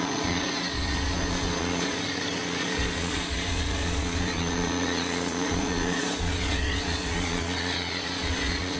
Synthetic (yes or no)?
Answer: yes